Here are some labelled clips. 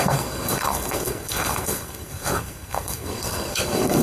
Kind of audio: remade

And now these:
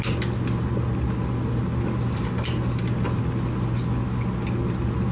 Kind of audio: recorded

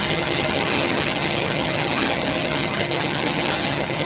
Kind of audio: remade